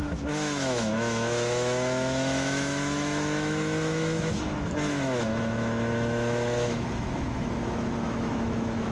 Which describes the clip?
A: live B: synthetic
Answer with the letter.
B